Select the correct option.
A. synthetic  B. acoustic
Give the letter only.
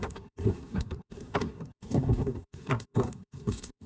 A